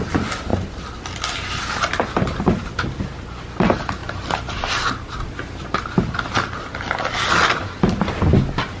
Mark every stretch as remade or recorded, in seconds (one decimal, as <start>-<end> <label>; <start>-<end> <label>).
0.0-4.0 recorded; 4.0-4.5 remade; 4.5-8.8 recorded